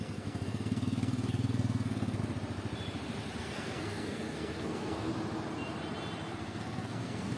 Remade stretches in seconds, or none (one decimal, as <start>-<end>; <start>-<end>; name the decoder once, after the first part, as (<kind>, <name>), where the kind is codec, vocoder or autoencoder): 0.0-2.2 (codec, SNAC); 3.4-5.1; 6.3-7.4